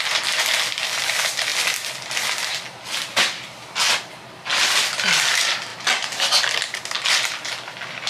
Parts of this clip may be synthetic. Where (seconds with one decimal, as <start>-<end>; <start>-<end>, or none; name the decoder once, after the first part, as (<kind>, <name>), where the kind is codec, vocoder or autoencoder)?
none